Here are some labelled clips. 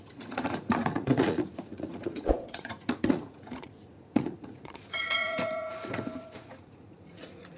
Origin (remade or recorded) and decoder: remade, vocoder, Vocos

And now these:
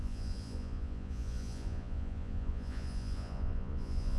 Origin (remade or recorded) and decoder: remade, vocoder, Vocos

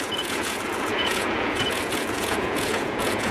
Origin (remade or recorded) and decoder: remade, vocoder, Vocos